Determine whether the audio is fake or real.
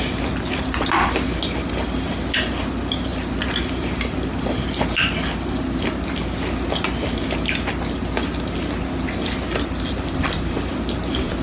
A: real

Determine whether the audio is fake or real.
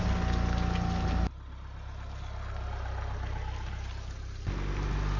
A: real